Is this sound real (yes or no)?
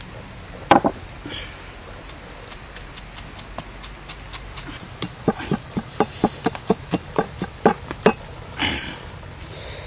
yes